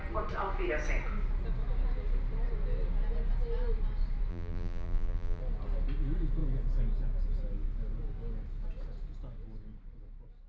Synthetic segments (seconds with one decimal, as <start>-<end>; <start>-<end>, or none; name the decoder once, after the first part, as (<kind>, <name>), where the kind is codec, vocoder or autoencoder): 4.3-5.4 (vocoder, BigVGAN v2)